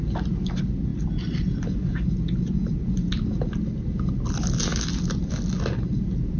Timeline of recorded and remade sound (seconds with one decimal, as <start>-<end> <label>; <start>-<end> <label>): 0.0-6.4 recorded